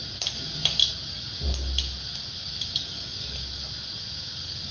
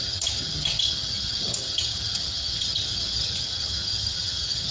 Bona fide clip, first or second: first